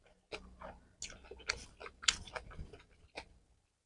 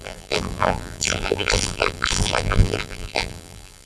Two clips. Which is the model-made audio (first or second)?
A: second